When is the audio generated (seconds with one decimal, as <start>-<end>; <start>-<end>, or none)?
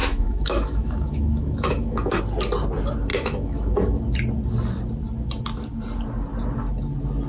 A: 0.0-2.2; 3.1-4.0